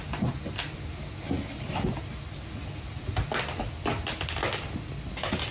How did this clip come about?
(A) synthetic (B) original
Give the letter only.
B